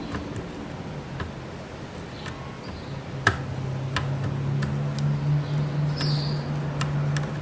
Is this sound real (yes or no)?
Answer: yes